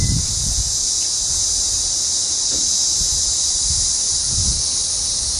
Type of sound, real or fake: real